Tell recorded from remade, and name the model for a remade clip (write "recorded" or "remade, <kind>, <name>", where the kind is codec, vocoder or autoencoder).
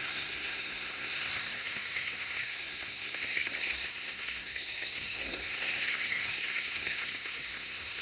remade, codec, SNAC